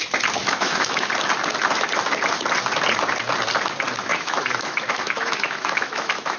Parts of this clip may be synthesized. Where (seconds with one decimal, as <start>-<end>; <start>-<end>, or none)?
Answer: 0.4-1.1; 4.1-6.4